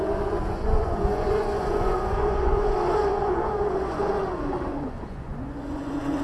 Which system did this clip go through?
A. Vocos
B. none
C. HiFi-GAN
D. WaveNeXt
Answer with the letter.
A